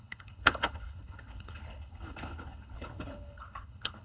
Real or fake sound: fake